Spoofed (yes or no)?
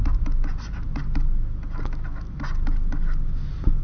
no